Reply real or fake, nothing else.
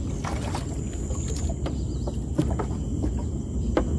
real